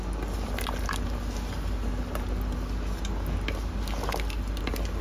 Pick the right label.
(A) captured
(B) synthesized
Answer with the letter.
A